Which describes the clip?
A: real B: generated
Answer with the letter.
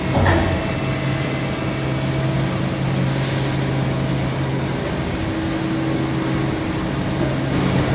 A